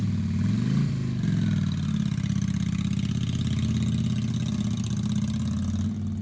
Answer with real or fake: real